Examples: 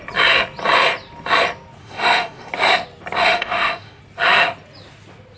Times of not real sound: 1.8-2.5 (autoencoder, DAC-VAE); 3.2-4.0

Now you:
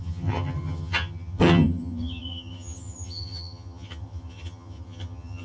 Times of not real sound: 0.0-5.4 (vocoder, HiFi-GAN)